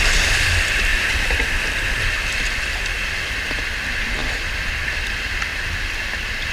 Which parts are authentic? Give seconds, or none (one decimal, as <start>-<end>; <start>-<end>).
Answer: 0.0-6.5